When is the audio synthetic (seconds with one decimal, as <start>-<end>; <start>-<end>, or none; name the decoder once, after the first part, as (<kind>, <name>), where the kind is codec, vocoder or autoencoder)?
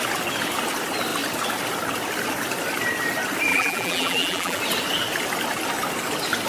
3.5-4.6 (vocoder, BigVGAN v2)